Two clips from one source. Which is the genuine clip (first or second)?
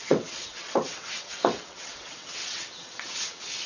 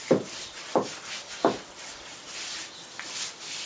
second